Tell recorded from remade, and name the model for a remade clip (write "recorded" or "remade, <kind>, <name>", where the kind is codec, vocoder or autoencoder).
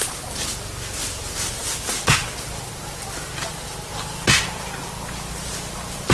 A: recorded